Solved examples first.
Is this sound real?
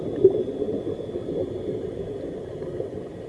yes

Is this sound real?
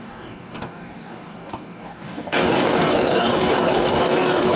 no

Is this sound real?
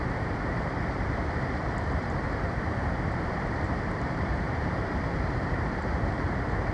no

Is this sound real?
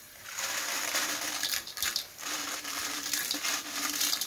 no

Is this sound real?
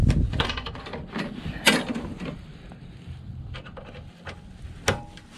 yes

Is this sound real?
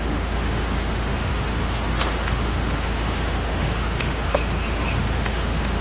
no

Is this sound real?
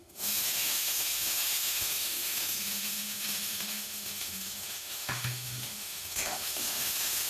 no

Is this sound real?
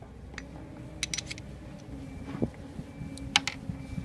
yes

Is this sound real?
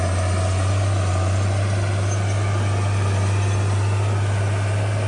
yes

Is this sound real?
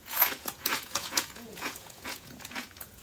no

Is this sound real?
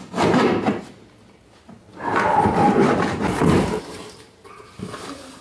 yes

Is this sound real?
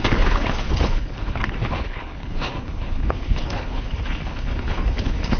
no